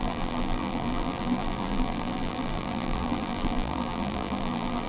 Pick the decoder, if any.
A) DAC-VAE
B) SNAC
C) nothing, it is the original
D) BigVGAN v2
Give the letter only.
D